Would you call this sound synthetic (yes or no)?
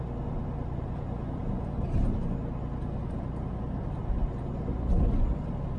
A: no